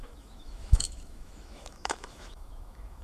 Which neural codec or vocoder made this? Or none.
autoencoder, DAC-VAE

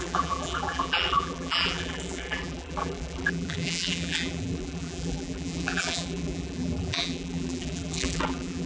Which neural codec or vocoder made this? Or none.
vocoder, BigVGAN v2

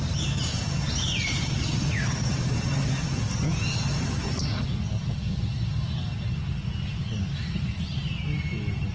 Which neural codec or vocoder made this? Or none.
none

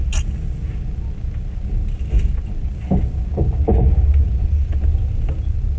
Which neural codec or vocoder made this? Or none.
none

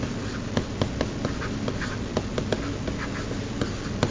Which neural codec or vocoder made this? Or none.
none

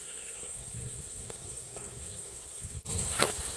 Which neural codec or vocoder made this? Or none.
codec, SNAC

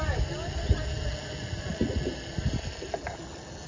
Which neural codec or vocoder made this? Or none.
none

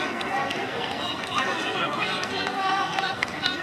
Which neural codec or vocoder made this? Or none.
codec, SNAC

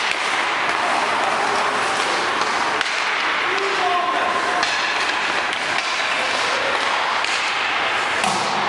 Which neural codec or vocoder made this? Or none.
none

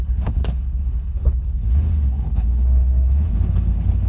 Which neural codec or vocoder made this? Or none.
codec, HILCodec